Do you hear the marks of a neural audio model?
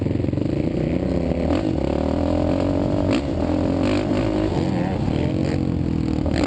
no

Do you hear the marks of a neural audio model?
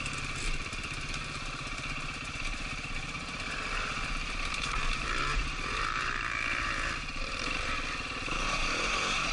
yes